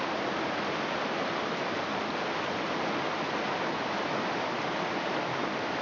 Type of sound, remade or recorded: recorded